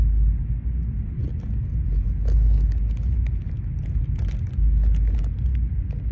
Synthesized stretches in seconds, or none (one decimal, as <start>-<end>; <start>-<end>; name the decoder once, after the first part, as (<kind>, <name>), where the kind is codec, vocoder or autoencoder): none